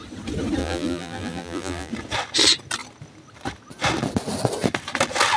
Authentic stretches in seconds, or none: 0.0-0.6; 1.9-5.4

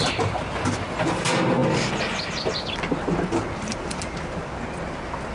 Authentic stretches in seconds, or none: 0.0-5.3

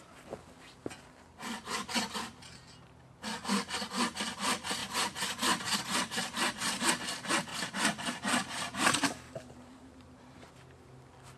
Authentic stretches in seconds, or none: 0.0-4.8; 6.8-7.5; 10.5-11.4

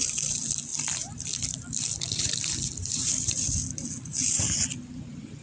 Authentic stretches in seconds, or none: 0.0-0.7; 3.9-5.4

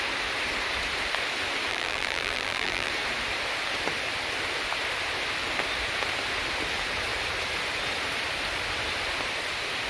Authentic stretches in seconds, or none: 0.0-1.7; 2.9-9.9